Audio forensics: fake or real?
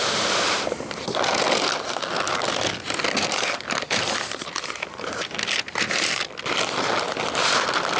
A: real